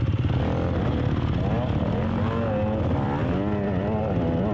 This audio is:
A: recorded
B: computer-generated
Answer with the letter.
A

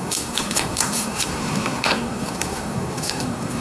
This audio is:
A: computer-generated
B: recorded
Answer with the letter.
A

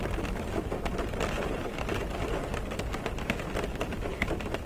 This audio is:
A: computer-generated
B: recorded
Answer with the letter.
B